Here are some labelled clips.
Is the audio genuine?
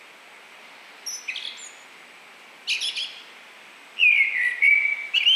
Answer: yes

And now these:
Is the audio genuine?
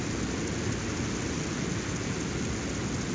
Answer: yes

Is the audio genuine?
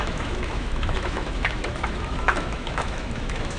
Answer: no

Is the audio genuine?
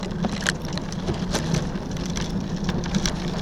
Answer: yes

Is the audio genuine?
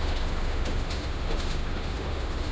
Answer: no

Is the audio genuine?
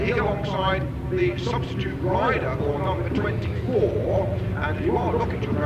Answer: yes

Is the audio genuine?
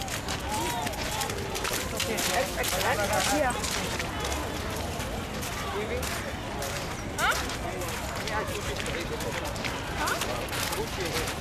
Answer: yes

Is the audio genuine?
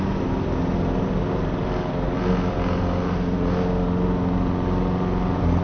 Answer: yes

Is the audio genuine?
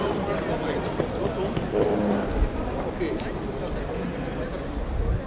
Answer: yes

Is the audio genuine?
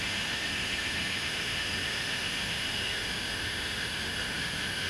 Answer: no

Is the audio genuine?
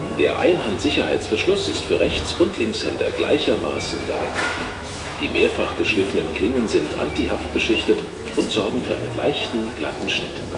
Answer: no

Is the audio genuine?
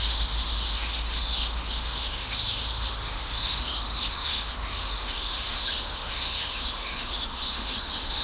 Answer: no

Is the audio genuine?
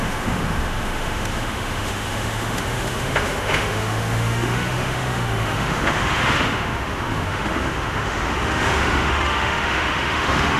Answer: no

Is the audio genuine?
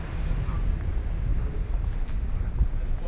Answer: yes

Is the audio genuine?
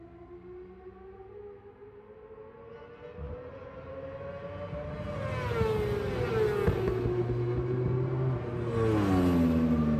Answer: yes